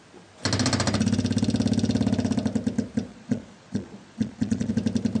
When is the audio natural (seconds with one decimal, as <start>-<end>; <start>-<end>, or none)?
0.0-3.1; 4.7-5.2